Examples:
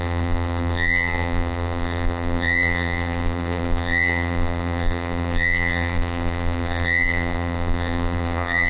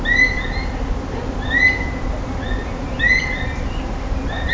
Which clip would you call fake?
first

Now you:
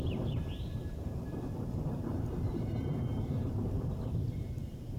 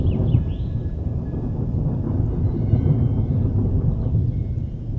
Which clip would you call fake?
first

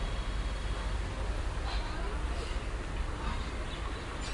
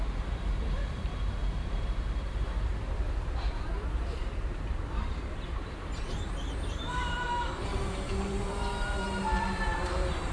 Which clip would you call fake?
second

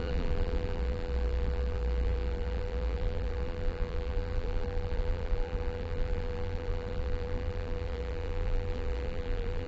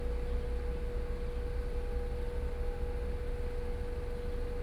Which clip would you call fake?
first